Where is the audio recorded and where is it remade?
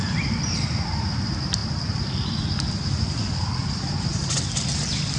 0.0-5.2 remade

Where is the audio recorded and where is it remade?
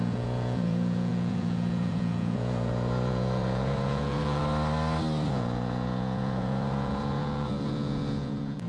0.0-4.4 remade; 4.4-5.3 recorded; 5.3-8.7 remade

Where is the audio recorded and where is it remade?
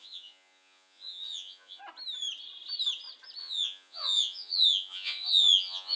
0.0-1.8 remade; 1.8-3.4 recorded; 3.4-6.0 remade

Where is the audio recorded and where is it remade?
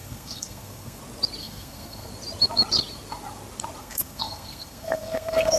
0.0-1.0 remade; 1.0-1.4 recorded; 1.4-2.1 remade; 2.1-3.8 recorded; 3.8-5.6 remade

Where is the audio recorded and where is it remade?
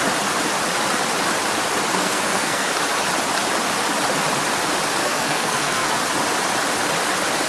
0.0-1.9 recorded; 1.9-2.7 remade; 2.7-5.0 recorded; 5.0-5.9 remade; 5.9-7.5 recorded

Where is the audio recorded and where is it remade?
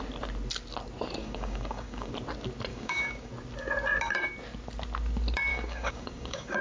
0.0-1.2 recorded; 1.2-2.1 remade; 2.1-2.7 recorded; 2.7-3.3 remade; 3.3-5.5 recorded; 5.5-6.6 remade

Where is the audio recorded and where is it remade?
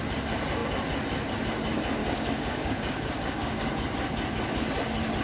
0.0-2.0 recorded; 2.0-3.7 remade; 3.7-5.2 recorded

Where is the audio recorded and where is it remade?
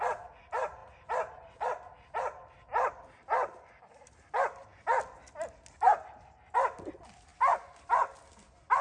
0.0-8.8 recorded